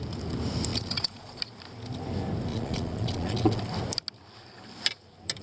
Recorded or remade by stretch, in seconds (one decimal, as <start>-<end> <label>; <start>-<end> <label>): 0.0-0.7 recorded; 0.7-1.4 remade; 1.4-2.5 recorded; 2.5-3.6 remade; 3.6-5.4 recorded